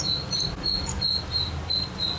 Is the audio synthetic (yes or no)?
no